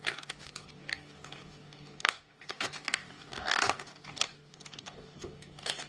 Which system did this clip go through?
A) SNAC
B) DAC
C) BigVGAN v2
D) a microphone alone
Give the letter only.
B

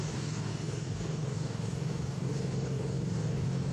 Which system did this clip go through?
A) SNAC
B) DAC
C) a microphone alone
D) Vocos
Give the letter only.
B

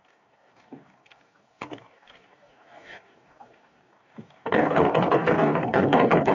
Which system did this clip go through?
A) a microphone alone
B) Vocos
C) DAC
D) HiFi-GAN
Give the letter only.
C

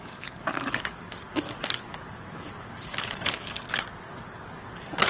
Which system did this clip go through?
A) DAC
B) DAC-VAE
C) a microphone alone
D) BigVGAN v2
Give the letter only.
A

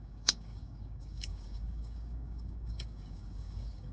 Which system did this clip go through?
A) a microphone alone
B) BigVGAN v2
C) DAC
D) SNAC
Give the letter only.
C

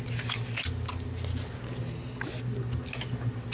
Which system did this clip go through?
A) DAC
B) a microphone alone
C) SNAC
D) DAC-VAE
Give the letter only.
B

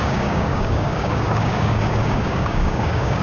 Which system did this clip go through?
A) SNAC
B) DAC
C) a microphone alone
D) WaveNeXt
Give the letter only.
B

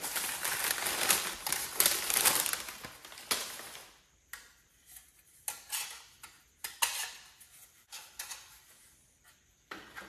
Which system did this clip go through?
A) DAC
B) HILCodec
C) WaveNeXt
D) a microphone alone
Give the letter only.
D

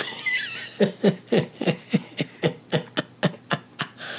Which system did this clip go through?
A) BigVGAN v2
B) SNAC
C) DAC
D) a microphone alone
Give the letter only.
D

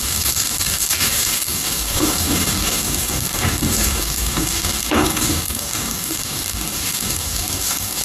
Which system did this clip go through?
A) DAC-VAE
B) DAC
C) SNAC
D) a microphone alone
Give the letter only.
B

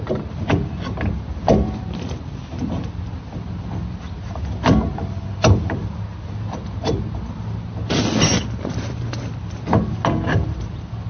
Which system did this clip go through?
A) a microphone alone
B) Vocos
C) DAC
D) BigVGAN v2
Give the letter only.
A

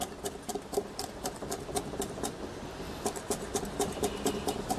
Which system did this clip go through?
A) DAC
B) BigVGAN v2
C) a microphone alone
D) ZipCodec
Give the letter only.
C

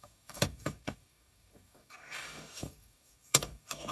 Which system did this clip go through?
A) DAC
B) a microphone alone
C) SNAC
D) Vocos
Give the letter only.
A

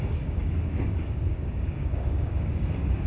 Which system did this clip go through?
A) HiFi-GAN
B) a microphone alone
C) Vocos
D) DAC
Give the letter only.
D